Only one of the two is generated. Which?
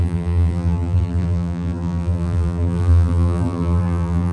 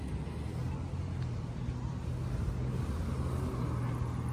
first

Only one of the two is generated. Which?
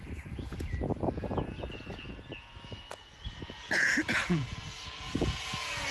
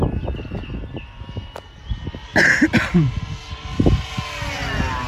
first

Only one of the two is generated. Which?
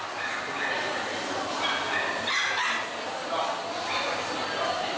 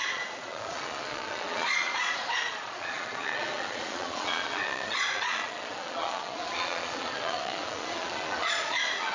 second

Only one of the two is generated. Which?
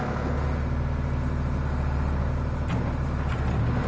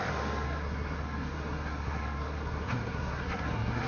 second